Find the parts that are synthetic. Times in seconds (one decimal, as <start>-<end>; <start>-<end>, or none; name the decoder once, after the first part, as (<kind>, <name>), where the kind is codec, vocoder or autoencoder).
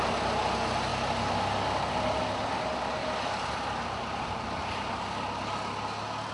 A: none